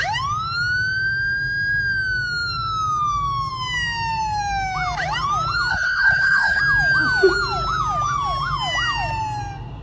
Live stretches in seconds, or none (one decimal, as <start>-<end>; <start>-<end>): 0.0-5.7; 6.6-9.8